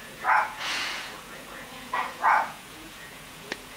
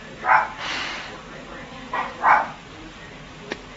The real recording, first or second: second